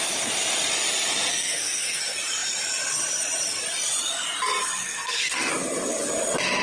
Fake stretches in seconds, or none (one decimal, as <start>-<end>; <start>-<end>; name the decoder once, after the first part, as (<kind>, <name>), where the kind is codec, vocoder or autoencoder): 1.3-2.0 (codec, SNAC); 4.8-5.5